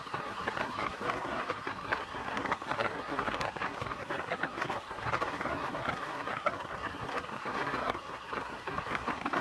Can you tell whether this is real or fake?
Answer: fake